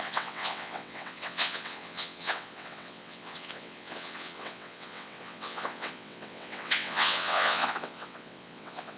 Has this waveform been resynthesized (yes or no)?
yes